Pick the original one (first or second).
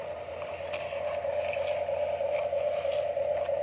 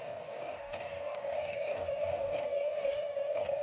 first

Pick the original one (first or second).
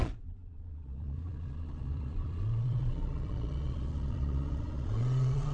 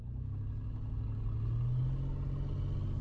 second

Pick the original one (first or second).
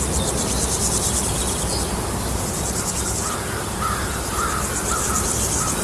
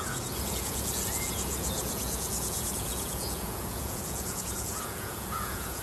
first